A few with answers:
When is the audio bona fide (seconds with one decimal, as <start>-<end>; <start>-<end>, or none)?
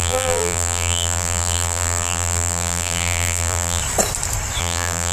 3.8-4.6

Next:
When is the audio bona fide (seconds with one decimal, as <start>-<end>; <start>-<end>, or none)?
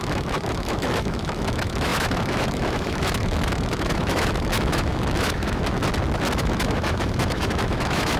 5.8-6.4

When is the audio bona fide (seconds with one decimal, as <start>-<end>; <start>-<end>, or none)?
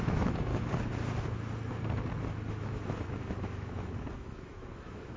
0.5-2.5